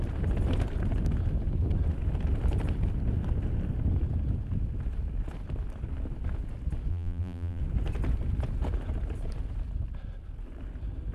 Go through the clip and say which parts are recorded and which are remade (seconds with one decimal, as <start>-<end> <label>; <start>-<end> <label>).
0.0-6.9 recorded; 6.9-7.6 remade; 7.6-11.1 recorded